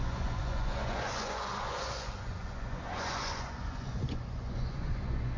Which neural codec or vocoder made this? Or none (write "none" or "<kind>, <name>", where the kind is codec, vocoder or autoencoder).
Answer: vocoder, Vocos